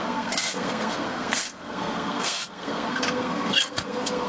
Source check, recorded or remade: remade